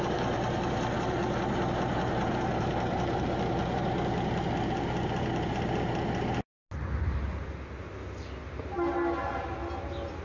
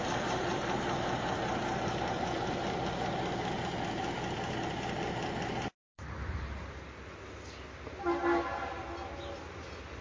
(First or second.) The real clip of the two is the first